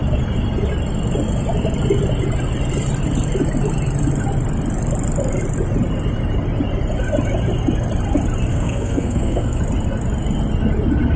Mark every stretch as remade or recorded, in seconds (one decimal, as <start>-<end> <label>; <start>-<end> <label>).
0.0-8.5 recorded; 8.5-9.6 remade; 9.6-11.2 recorded